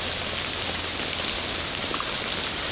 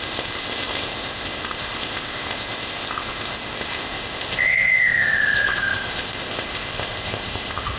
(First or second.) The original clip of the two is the first